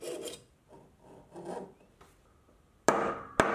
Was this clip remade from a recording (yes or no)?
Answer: no